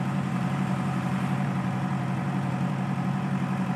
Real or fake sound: fake